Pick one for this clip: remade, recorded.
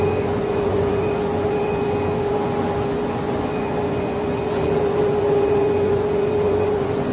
remade